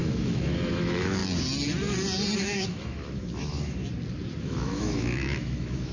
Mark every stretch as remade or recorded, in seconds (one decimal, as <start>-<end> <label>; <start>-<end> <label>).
0.0-1.2 remade; 1.2-2.4 recorded; 2.4-3.8 remade; 3.8-4.4 recorded; 4.4-5.9 remade